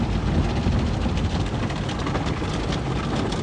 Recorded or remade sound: recorded